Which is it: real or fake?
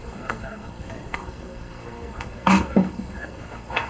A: fake